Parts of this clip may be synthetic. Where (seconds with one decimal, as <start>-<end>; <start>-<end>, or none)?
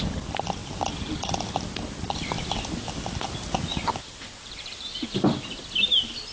3.7-4.9